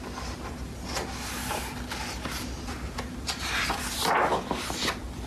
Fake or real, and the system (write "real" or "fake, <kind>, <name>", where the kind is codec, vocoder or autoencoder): real